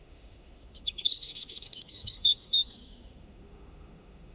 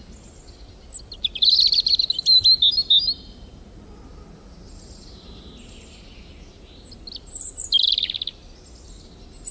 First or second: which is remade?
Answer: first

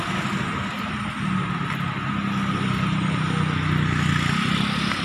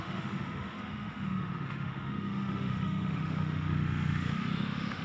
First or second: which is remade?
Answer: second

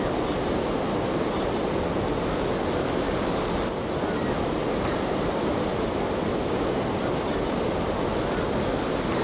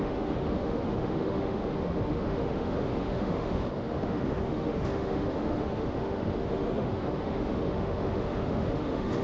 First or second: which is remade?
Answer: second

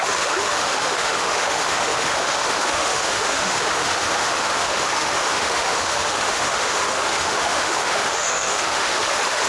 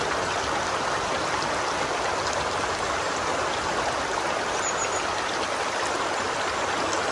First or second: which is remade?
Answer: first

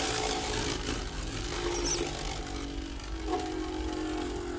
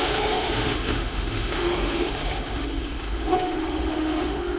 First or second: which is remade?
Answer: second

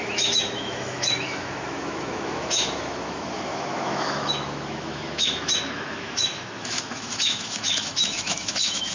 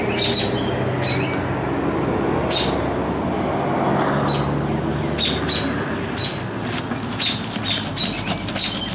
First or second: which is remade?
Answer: first